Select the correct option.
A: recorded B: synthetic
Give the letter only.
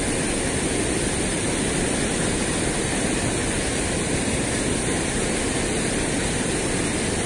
A